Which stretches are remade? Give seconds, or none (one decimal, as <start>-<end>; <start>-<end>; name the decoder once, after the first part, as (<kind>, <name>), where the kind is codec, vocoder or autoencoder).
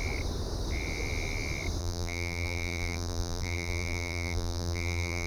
1.8-5.3 (vocoder, BigVGAN v2)